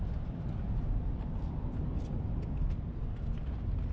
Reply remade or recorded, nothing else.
recorded